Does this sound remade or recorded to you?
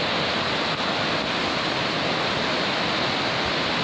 recorded